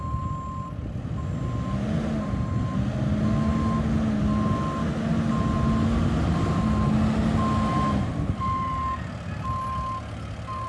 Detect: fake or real real